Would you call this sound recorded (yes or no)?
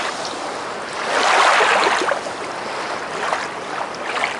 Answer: yes